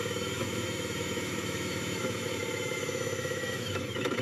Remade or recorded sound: remade